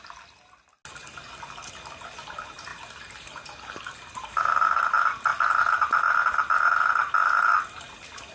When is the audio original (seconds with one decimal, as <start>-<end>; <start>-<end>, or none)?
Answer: 0.0-2.7; 4.8-8.3